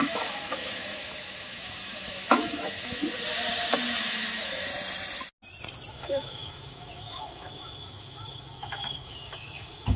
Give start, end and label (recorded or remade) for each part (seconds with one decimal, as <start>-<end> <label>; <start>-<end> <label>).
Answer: 0.0-3.0 remade; 3.0-4.0 recorded; 4.0-4.7 remade; 4.7-5.9 recorded; 5.9-10.0 remade